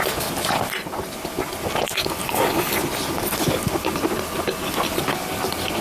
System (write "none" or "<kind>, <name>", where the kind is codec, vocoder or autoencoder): none